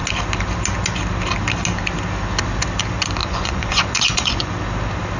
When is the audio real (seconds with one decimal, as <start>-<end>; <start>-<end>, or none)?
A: 0.0-3.2; 4.5-5.2